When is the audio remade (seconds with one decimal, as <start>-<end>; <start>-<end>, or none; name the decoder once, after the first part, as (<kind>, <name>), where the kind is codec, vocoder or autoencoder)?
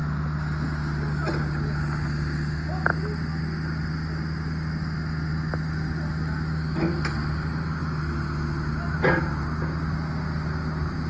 none